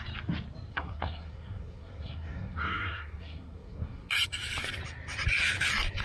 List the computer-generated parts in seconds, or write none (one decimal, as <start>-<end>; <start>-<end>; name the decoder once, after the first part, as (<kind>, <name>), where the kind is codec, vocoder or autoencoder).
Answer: 0.7-4.1 (codec, SNAC)